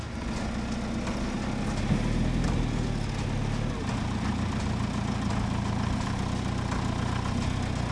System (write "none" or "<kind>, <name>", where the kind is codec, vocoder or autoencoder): none